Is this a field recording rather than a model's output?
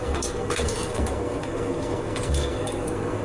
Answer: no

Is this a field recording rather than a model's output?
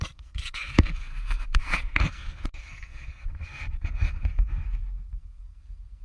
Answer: no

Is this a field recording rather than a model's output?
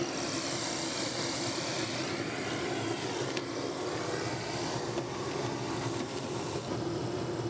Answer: yes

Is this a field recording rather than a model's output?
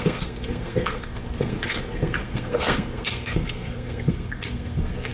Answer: no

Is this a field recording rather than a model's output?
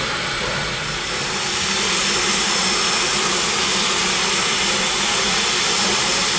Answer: yes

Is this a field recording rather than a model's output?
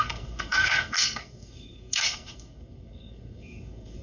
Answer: no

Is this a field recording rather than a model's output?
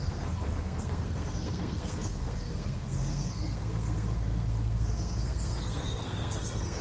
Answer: no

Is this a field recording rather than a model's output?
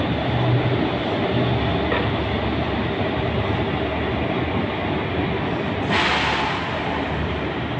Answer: yes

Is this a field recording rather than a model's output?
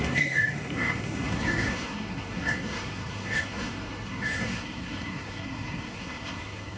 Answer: no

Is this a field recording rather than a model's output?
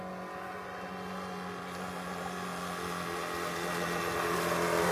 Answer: yes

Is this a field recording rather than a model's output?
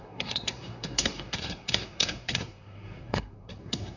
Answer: no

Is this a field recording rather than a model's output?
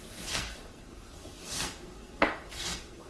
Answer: no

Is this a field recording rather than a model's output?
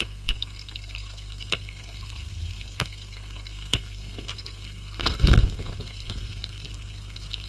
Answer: no